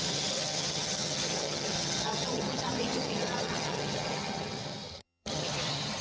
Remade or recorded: remade